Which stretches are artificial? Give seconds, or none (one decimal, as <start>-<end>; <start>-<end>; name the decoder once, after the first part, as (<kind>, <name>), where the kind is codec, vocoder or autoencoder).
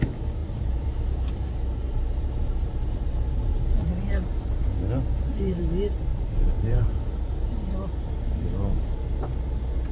0.4-3.1 (vocoder, BigVGAN v2); 4.6-5.6; 6.1-7.0